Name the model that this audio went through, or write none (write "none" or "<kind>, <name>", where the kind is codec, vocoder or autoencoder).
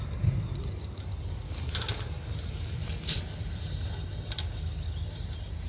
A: none